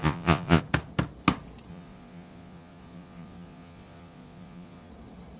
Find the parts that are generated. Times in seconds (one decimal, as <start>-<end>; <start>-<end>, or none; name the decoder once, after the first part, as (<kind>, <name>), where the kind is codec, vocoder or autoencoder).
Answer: 0.0-0.6 (vocoder, Vocos); 1.7-4.9